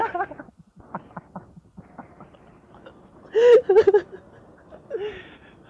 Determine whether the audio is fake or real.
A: real